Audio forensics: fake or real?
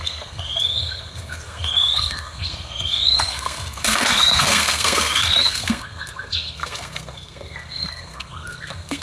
fake